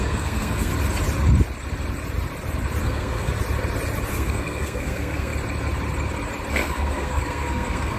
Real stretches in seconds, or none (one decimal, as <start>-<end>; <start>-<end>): 0.7-2.8; 3.3-4.1; 5.3-6.5